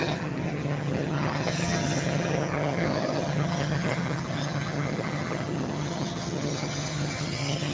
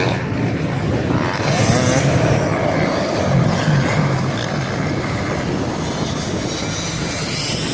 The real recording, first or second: second